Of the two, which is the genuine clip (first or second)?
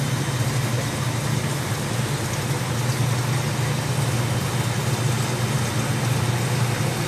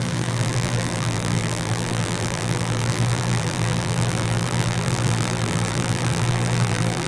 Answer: first